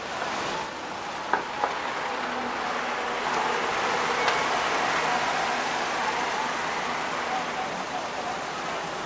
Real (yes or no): yes